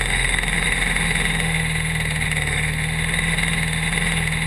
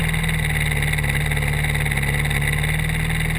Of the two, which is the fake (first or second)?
first